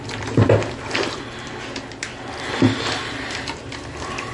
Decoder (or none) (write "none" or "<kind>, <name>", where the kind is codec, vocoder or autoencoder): none